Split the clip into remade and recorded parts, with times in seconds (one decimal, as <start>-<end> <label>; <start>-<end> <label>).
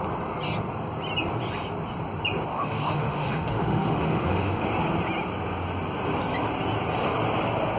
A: 0.0-2.5 recorded; 2.5-4.6 remade; 4.6-7.8 recorded